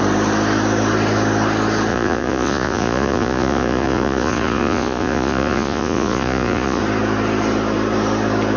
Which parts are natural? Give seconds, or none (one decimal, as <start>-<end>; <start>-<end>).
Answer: 0.0-1.9; 6.8-8.6